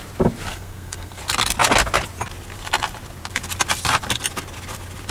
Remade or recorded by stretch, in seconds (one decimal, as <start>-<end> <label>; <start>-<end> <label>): 0.0-0.5 recorded; 0.5-1.2 remade; 1.2-5.1 recorded